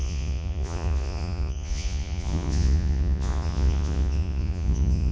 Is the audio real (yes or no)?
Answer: no